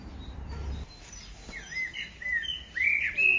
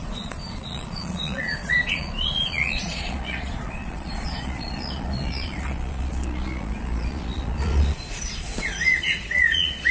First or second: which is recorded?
first